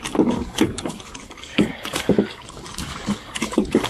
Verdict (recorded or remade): remade